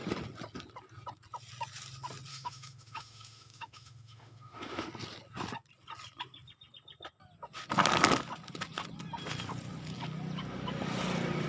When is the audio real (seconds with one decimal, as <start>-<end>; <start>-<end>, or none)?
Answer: 0.0-2.3; 4.9-11.5

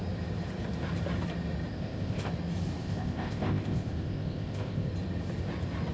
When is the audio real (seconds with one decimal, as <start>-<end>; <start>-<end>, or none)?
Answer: 0.0-1.7; 2.3-2.8; 4.9-5.9

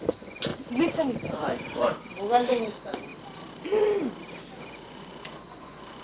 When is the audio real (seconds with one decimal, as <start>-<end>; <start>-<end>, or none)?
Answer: 0.5-1.3; 3.1-4.6

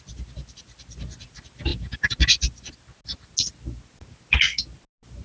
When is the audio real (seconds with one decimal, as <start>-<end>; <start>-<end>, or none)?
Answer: 0.0-5.2

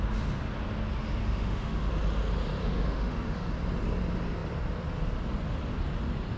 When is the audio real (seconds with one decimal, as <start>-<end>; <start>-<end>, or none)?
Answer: 0.0-1.2; 1.9-2.6; 3.5-6.4

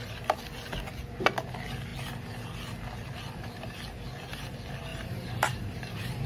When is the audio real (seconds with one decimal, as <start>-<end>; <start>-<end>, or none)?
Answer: 0.0-4.9

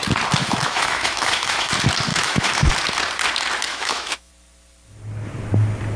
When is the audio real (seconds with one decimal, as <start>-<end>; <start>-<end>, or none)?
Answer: 0.0-0.4; 1.7-2.1; 2.7-3.7; 4.3-6.0